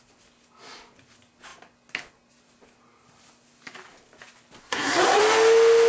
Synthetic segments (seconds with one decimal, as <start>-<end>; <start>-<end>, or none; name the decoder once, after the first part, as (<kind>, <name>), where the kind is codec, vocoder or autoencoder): 4.6-5.2 (codec, SNAC)